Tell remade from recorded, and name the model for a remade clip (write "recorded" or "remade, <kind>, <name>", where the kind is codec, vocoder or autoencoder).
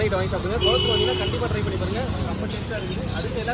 recorded